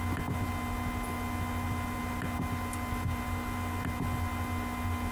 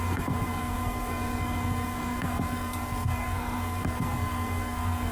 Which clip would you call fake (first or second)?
second